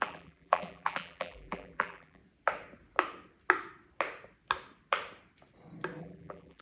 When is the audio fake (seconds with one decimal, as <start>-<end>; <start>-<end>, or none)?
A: 0.0-2.2; 6.0-6.6

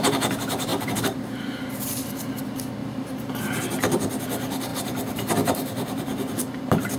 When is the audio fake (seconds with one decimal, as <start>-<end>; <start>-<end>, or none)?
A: 0.7-2.4; 2.8-3.6; 4.7-7.0

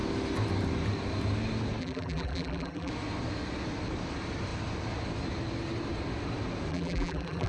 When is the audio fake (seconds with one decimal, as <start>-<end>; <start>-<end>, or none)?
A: 1.8-2.9; 6.7-7.5

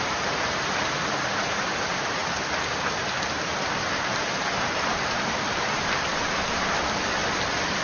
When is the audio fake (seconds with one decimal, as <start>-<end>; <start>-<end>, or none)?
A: 0.0-2.2; 3.6-6.1

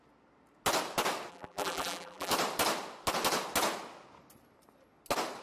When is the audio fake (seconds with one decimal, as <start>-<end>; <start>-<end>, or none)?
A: 1.3-2.3